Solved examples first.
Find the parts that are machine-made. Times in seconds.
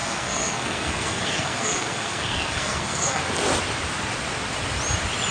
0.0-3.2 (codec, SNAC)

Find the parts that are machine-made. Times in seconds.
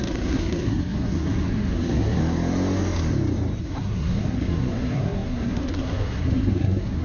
0.0-2.2 (codec, SNAC); 3.6-7.0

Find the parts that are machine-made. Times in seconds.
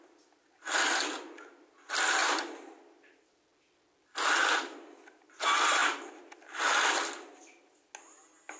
2.2-2.8 (vocoder, BigVGAN v2); 5.8-7.8